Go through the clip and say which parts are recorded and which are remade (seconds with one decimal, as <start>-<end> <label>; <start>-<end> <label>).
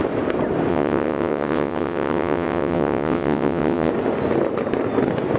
0.0-0.7 recorded; 0.7-3.9 remade; 3.9-5.4 recorded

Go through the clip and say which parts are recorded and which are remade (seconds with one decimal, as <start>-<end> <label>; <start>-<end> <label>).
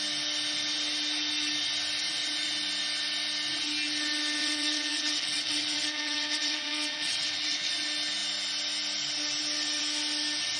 0.0-4.4 recorded; 4.4-7.7 remade; 7.7-10.6 recorded